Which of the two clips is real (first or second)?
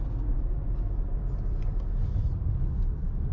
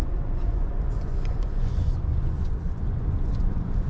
first